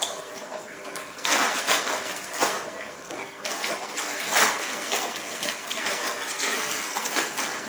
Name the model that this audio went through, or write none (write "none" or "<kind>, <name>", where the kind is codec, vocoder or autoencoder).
codec, SNAC